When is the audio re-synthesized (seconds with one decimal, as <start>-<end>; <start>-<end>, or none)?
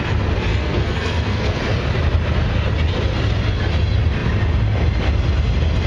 0.5-1.6